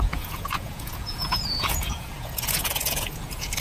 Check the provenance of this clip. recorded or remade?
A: remade